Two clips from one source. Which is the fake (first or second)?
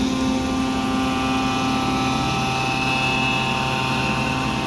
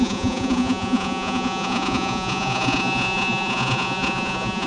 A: second